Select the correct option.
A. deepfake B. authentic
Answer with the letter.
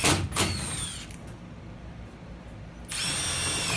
B